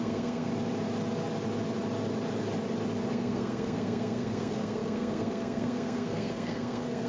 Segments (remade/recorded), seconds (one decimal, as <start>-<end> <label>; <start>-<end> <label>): 0.0-0.5 remade; 0.5-3.1 recorded; 3.1-7.1 remade